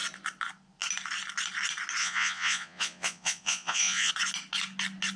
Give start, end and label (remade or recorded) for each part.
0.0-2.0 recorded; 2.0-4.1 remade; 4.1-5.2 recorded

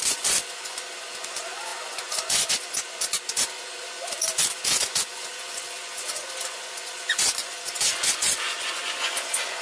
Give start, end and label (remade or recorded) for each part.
0.0-9.6 remade